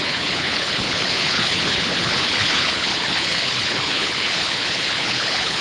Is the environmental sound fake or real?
fake